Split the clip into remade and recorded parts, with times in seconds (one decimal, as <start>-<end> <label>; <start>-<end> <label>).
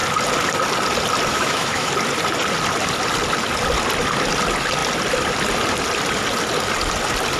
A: 0.0-1.3 recorded; 1.3-1.9 remade; 1.9-7.4 recorded